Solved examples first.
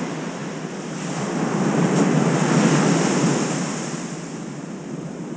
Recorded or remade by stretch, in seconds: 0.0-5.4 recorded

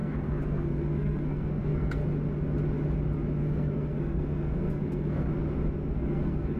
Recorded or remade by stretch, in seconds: 0.0-2.0 remade; 2.0-3.4 recorded; 3.4-5.3 remade; 5.3-5.8 recorded; 5.8-6.6 remade

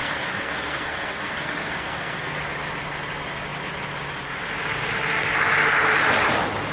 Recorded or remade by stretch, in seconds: 0.0-2.4 remade; 2.4-6.7 recorded

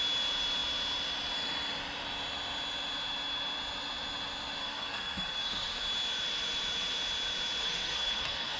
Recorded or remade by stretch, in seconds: 0.0-4.6 recorded; 4.6-5.8 remade; 5.8-7.6 recorded; 7.6-8.6 remade

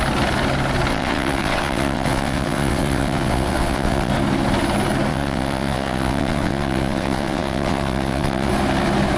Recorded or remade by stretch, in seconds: 0.0-0.9 recorded; 0.9-4.1 remade; 4.1-5.1 recorded; 5.1-8.5 remade; 8.5-9.2 recorded

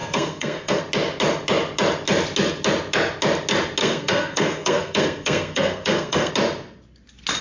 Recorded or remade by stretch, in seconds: 0.0-0.8 remade; 0.8-3.8 recorded; 3.8-6.3 remade; 6.3-7.4 recorded

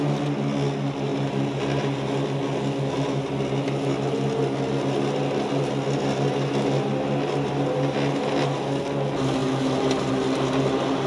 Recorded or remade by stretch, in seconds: 0.0-11.1 recorded

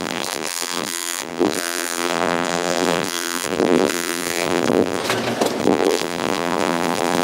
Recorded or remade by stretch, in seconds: 0.0-5.0 remade; 5.0-5.6 recorded; 5.6-7.2 remade